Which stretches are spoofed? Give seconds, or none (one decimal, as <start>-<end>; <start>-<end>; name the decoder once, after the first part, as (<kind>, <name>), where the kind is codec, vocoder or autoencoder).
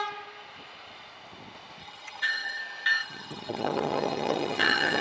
1.8-2.6 (vocoder, HiFi-GAN); 3.0-5.0